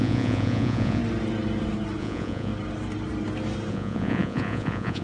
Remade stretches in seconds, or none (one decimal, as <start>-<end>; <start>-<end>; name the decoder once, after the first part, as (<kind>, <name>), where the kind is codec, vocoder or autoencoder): 0.0-1.0 (vocoder, Vocos); 2.0-2.5; 3.7-5.0